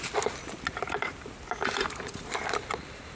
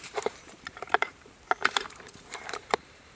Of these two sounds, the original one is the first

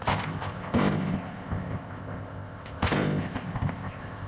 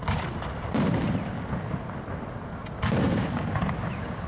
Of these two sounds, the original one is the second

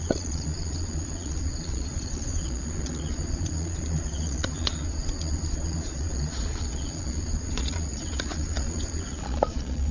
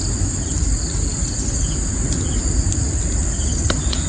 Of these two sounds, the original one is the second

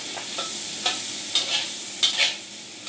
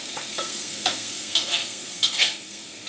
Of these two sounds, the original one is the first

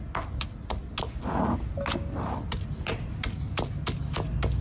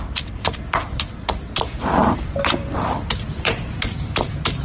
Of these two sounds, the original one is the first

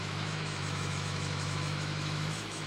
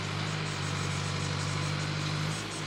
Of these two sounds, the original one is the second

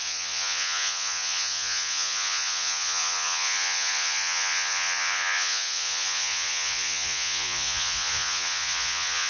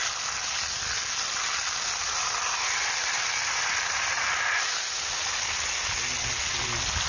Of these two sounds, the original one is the second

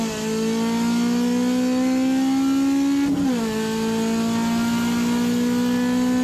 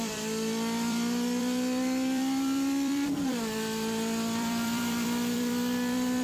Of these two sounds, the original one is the first